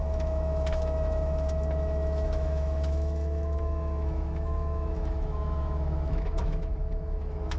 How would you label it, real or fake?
fake